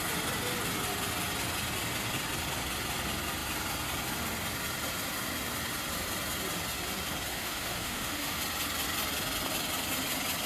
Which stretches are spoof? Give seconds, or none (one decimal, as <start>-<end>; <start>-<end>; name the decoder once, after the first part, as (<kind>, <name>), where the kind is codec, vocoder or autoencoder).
7.3-8.4 (autoencoder, DAC-VAE)